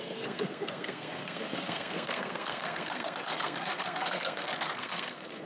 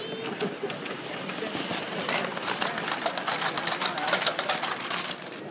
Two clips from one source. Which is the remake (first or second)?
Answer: first